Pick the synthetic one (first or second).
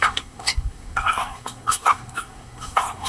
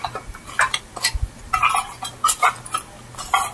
first